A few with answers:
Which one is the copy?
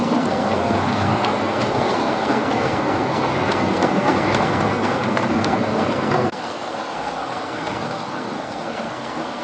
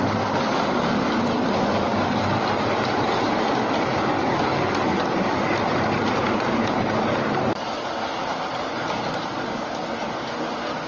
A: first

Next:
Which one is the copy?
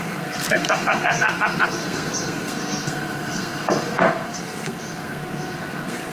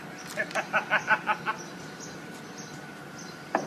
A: first